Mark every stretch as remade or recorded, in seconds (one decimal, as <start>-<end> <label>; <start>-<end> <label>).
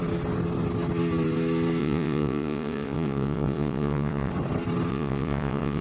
0.0-1.8 recorded; 1.8-4.3 remade; 4.3-4.9 recorded; 4.9-5.8 remade